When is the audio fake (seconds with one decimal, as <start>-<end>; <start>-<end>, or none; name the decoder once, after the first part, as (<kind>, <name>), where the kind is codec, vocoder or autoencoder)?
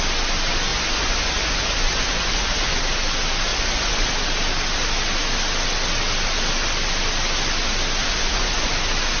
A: 0.7-2.8 (vocoder, Vocos); 3.5-4.1; 8.0-8.7